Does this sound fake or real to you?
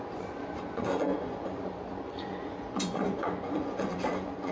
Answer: fake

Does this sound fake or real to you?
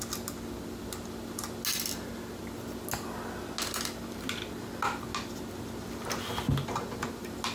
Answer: real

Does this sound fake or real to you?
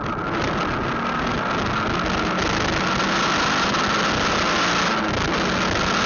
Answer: real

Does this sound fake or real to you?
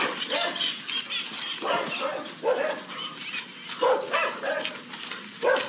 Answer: real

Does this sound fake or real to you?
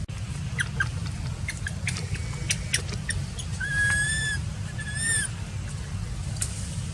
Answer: real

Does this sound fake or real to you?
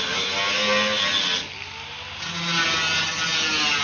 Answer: real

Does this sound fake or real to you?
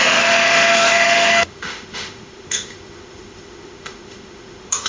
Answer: fake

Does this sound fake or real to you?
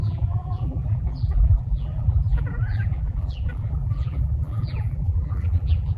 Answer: fake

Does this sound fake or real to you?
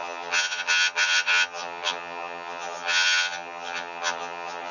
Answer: fake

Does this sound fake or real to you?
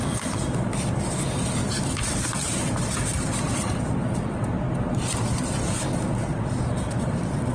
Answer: fake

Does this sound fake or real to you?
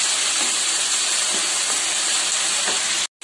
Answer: real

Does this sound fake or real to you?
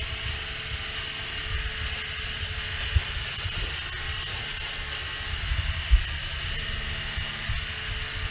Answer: real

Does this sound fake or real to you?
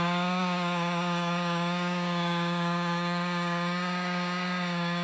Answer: fake